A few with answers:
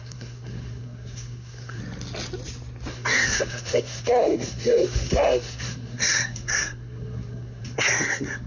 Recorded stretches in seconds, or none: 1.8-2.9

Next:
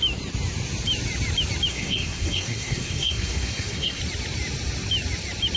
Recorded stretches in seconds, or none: 0.0-1.7; 4.0-5.6

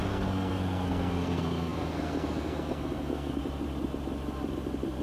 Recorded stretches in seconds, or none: 3.4-5.0

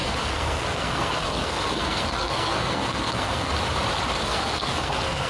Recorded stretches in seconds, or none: 3.5-4.2